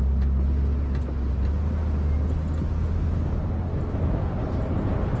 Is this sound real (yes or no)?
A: yes